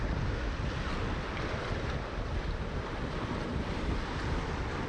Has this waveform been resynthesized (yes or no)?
no